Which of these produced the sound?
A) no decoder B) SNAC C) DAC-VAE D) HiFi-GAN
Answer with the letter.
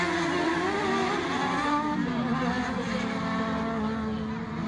A